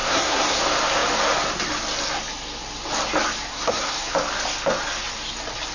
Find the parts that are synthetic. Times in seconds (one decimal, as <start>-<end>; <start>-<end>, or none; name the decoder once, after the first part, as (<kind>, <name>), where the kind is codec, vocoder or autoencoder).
0.0-0.6 (codec, SNAC); 3.5-4.1